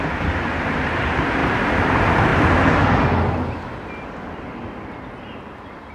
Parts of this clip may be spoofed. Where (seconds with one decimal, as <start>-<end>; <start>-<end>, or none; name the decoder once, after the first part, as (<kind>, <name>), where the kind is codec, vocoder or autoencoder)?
1.4-1.9 (vocoder, BigVGAN v2)